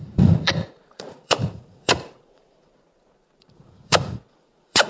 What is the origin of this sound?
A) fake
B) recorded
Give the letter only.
A